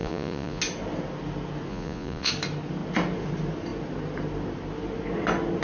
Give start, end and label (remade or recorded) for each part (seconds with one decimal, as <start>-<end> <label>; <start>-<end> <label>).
0.0-0.6 remade; 0.6-1.7 recorded; 1.7-2.3 remade; 2.3-5.6 recorded